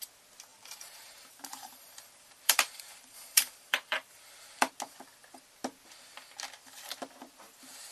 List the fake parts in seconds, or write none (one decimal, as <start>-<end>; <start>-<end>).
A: 0.5-4.7